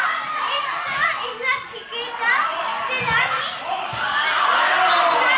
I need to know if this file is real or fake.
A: real